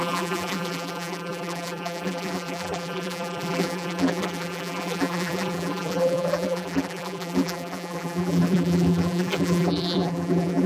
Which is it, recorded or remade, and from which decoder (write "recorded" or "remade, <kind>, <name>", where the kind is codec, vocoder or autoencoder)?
remade, vocoder, BigVGAN v2